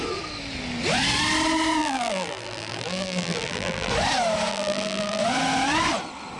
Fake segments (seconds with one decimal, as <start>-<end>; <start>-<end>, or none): 1.8-3.9; 4.5-5.2